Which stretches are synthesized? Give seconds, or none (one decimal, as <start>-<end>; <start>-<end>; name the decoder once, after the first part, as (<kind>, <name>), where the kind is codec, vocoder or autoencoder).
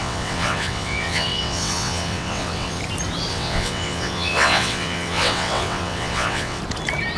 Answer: 0.0-2.8 (vocoder, WaveNeXt); 3.3-6.6